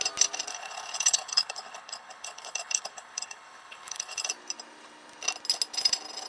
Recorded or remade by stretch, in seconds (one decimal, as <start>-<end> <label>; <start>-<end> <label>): 0.0-0.5 recorded; 0.5-4.3 remade; 4.3-6.3 recorded